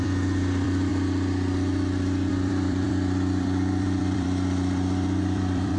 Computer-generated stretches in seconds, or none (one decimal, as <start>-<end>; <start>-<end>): 0.0-0.9; 2.3-5.8